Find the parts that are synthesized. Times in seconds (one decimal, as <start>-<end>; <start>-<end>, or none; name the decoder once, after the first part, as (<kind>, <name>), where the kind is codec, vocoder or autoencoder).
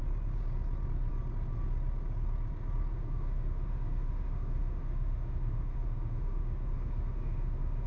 2.9-7.9 (autoencoder, DAC-VAE)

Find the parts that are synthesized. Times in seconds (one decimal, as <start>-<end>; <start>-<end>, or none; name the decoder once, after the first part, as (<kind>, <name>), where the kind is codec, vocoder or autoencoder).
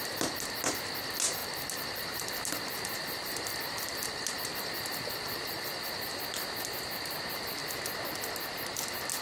none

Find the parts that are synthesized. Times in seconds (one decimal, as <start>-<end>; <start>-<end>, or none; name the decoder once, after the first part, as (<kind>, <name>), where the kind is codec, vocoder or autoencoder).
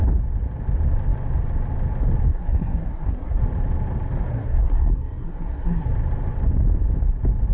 2.3-3.4 (codec, SNAC); 4.3-5.9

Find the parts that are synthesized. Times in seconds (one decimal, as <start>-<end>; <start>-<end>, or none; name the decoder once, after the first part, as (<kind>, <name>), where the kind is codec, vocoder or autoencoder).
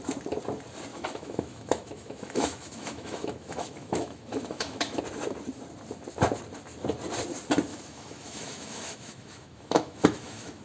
0.9-5.0 (autoencoder, DAC-VAE); 7.7-10.6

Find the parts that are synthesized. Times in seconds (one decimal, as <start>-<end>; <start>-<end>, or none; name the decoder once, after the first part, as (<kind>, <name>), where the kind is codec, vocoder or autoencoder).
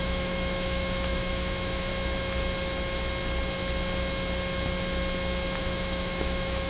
0.0-1.9 (autoencoder, DAC-VAE); 5.6-6.7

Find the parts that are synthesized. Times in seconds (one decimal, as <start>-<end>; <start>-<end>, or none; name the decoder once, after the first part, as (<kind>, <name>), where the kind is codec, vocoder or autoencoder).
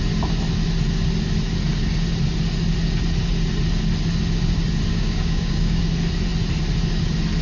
4.9-5.8 (codec, DAC)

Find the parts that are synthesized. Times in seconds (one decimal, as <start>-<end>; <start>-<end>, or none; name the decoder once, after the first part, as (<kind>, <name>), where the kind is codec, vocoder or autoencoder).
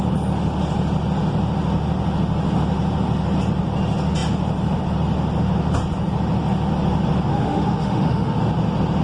7.3-8.4 (autoencoder, DAC-VAE)